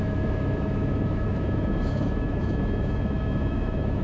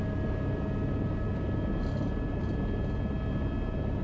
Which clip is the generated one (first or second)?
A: first